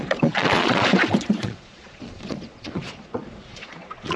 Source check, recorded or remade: remade